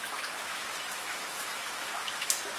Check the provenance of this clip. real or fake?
fake